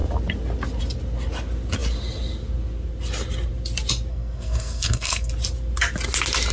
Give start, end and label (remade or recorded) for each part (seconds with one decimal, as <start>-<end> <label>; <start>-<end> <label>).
0.0-4.1 recorded; 4.1-5.3 remade; 5.3-6.5 recorded